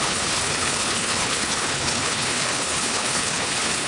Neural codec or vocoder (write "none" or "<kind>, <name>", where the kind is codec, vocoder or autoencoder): codec, HILCodec